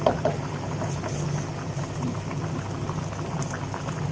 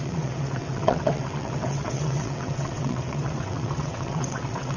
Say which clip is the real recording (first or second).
first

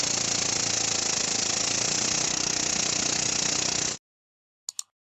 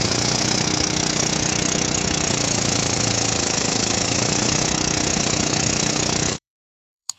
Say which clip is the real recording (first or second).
first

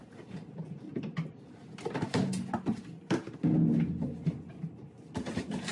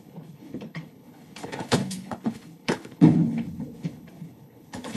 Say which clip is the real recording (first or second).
first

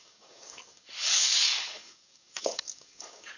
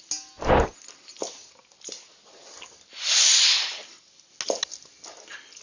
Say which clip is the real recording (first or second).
second